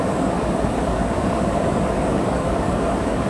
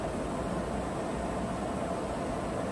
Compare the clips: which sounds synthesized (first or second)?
first